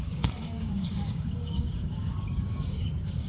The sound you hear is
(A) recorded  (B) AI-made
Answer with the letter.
B